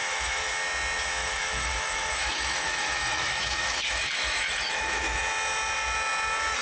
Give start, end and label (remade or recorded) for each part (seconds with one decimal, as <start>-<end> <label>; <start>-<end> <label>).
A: 0.0-0.5 remade; 0.5-1.2 recorded; 1.2-5.2 remade; 5.2-6.6 recorded